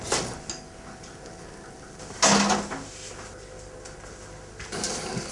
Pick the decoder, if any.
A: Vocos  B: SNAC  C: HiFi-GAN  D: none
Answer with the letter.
D